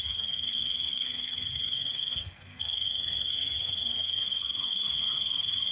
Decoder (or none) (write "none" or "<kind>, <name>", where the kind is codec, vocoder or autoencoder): codec, SNAC